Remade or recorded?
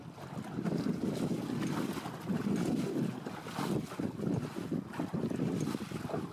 recorded